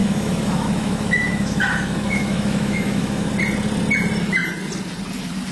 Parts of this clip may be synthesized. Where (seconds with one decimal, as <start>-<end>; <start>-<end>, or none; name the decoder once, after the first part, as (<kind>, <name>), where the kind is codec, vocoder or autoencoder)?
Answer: 0.0-3.3 (autoencoder, DAC-VAE)